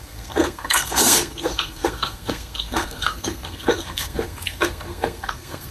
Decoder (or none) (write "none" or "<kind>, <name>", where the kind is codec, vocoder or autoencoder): codec, SNAC